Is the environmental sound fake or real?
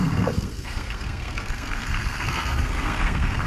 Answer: fake